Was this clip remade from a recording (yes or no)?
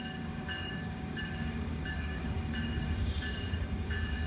yes